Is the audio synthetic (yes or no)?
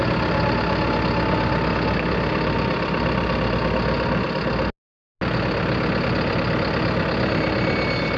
no